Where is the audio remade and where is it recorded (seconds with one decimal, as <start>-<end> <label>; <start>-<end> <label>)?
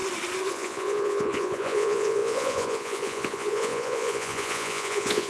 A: 0.0-0.5 recorded; 0.5-5.3 remade